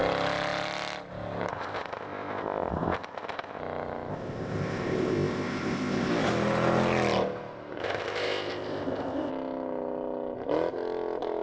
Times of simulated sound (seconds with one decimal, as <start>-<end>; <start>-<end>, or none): 1.5-3.6; 4.1-6.1; 7.8-9.3